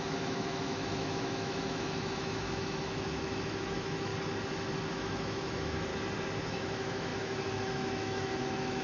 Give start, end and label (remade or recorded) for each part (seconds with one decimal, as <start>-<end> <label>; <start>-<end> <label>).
0.0-4.1 remade; 4.1-4.9 recorded; 4.9-5.9 remade; 5.9-6.5 recorded; 6.5-8.8 remade